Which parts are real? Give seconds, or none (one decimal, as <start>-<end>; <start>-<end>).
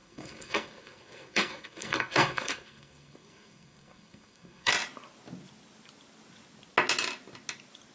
4.7-7.9